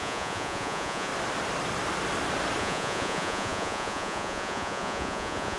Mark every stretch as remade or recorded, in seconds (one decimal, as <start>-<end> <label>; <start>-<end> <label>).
0.0-1.1 remade; 1.1-2.6 recorded; 2.6-5.6 remade